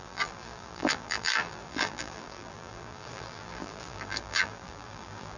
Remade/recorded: remade